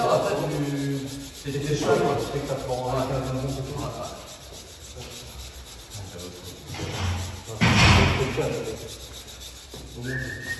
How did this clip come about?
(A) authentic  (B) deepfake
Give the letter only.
A